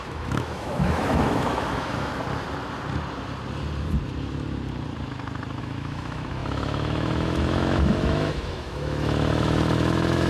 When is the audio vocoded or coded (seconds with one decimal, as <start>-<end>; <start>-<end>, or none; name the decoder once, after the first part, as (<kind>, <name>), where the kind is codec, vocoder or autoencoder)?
0.0-2.1 (autoencoder, DAC-VAE); 5.6-10.3